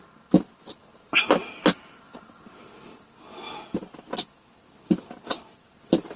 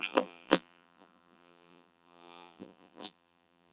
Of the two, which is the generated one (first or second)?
second